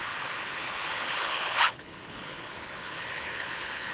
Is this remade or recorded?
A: remade